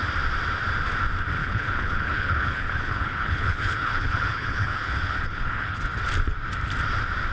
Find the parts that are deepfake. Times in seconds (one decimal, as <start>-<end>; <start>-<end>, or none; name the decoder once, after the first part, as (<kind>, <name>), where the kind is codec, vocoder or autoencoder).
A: 1.4-5.8 (codec, HILCodec)